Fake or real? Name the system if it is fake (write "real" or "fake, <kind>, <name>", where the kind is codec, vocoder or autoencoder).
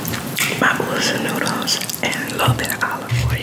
real